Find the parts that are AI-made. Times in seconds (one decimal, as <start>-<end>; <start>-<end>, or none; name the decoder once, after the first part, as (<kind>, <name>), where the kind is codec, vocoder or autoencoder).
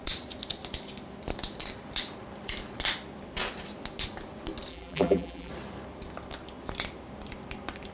4.7-5.5 (vocoder, BigVGAN v2)